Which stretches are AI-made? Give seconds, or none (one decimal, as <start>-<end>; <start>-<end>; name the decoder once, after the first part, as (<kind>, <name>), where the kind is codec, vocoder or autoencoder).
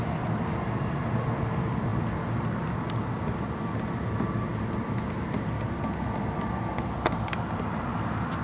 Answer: none